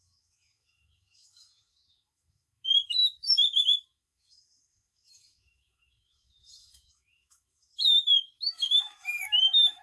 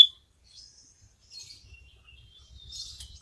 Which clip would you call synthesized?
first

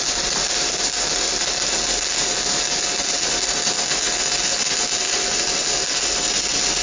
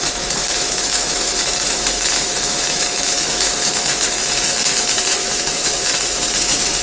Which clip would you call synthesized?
second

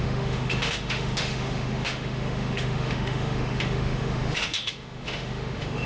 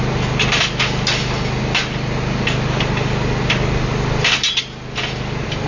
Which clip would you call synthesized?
first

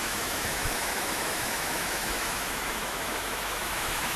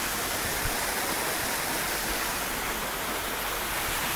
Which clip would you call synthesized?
first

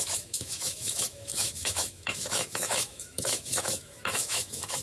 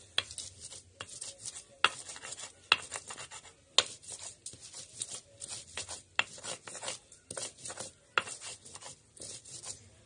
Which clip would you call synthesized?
first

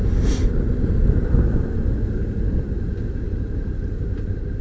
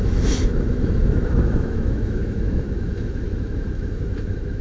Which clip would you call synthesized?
second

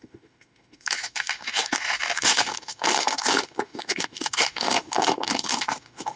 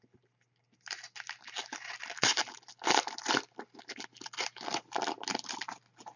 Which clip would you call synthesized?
first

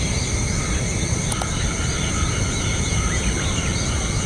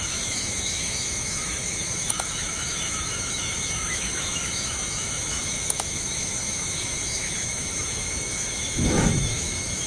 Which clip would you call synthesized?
second